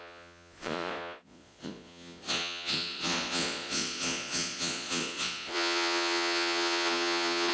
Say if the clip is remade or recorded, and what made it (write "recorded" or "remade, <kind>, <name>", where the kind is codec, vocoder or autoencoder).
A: remade, vocoder, Vocos